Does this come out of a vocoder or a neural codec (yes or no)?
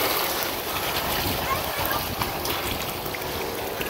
no